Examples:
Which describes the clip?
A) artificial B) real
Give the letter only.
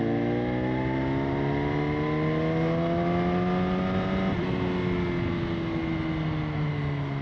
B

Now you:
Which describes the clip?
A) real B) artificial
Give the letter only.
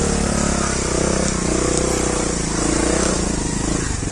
A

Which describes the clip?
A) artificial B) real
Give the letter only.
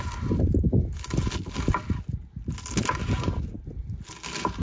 B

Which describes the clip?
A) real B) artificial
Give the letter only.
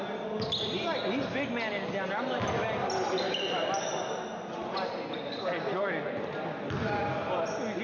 A